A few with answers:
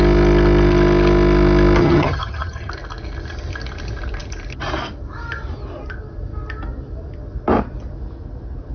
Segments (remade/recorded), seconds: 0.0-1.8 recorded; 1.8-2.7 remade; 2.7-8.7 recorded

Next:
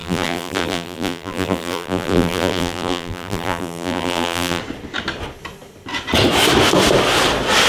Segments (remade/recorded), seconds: 0.0-4.6 remade; 4.6-7.7 recorded

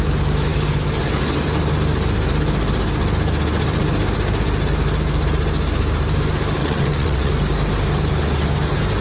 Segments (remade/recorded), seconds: 0.0-6.6 recorded; 6.6-7.3 remade; 7.3-9.0 recorded

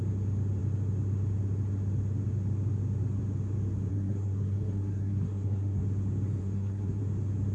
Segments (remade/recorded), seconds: 0.0-3.9 recorded; 3.9-5.8 remade; 5.8-6.4 recorded; 6.4-7.0 remade; 7.0-7.5 recorded

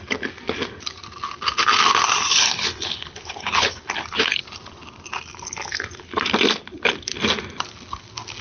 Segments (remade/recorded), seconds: 0.0-2.3 recorded; 2.3-3.9 remade; 3.9-8.4 recorded

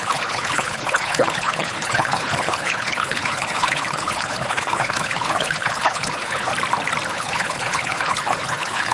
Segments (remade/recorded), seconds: 0.0-6.5 remade; 6.5-7.1 recorded; 7.1-8.9 remade